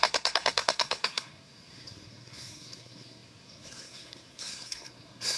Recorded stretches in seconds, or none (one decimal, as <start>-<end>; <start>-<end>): none